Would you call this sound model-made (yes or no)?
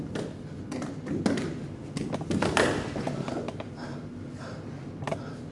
no